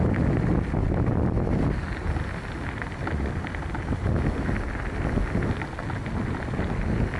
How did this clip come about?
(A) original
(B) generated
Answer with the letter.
A